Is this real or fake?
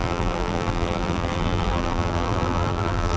fake